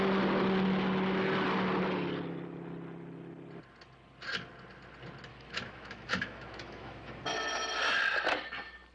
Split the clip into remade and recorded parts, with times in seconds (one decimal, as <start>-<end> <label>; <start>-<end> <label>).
0.0-5.3 recorded; 5.3-7.2 remade; 7.2-8.9 recorded